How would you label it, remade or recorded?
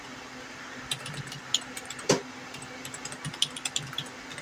recorded